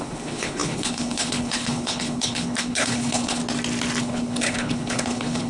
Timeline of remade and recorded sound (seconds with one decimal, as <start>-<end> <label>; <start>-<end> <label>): 0.0-3.4 remade; 3.4-4.0 recorded; 4.0-5.5 remade